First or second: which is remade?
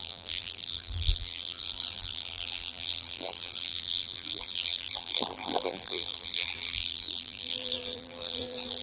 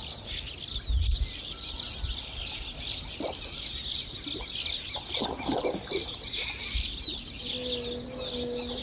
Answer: first